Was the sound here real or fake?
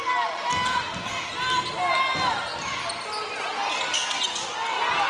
real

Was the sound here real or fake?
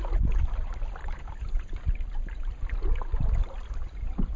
real